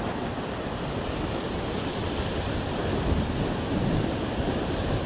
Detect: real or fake real